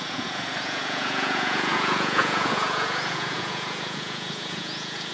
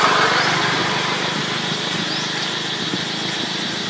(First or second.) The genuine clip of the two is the second